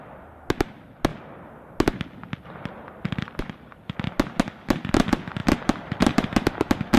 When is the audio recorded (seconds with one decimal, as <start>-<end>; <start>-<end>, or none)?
0.0-5.4